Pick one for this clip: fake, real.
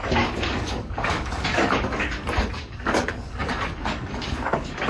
fake